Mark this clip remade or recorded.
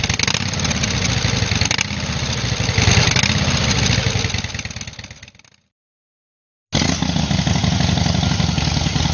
recorded